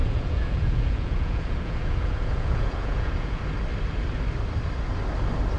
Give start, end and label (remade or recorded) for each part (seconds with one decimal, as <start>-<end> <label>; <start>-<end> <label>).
0.0-3.4 remade; 3.4-5.6 recorded